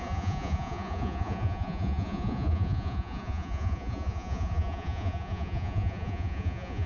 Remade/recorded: remade